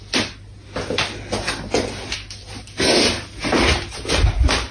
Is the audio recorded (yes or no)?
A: yes